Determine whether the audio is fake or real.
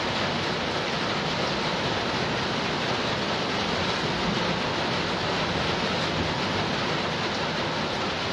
real